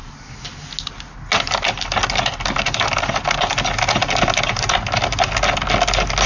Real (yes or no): yes